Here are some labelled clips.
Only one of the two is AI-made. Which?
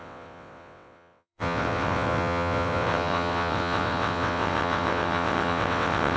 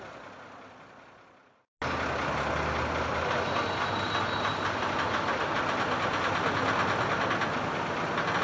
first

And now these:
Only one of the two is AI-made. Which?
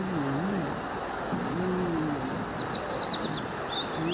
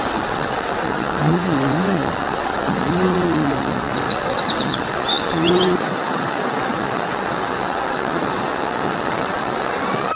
second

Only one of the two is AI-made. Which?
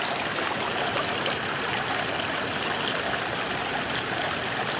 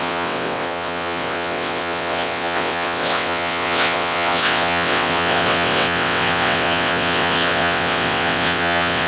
second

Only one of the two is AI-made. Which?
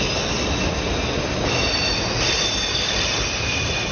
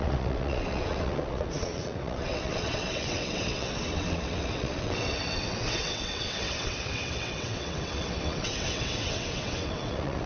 second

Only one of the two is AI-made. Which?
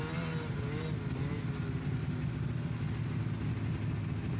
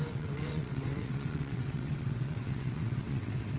second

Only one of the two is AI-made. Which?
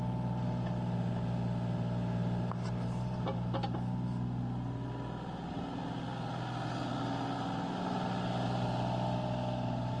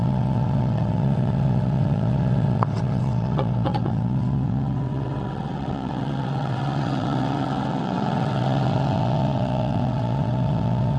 second